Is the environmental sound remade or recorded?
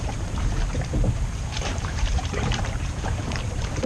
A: remade